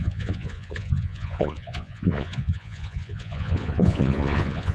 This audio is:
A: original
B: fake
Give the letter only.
B